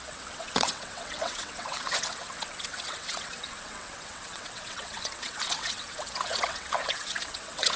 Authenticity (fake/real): fake